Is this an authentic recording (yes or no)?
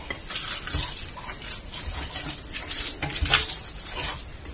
yes